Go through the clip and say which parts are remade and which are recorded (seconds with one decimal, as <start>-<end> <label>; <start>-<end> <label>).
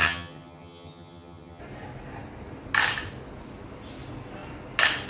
0.0-1.6 remade; 1.6-5.1 recorded